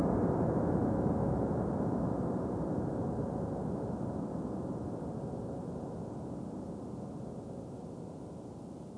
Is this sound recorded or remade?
recorded